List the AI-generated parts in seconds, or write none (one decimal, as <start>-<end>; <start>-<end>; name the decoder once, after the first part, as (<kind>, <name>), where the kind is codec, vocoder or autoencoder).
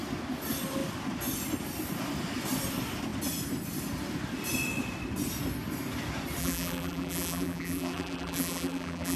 6.4-9.2 (vocoder, BigVGAN v2)